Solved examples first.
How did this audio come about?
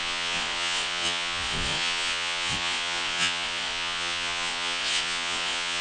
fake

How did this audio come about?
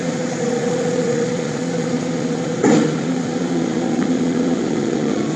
fake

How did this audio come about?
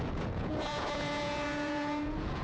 fake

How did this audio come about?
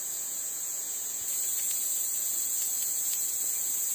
fake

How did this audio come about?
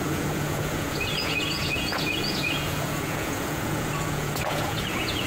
fake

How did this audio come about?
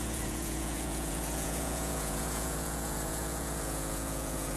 fake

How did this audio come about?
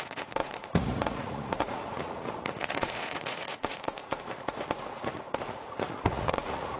fake